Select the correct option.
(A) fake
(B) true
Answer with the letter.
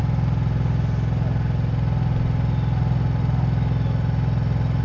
B